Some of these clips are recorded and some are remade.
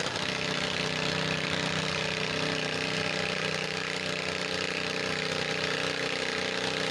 recorded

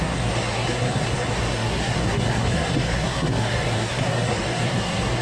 remade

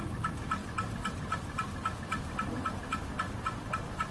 recorded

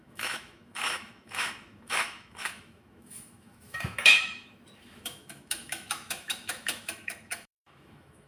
remade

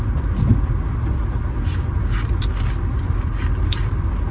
recorded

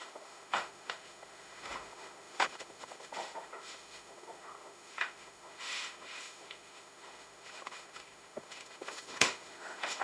remade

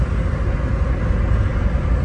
recorded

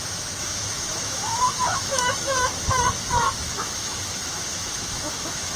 remade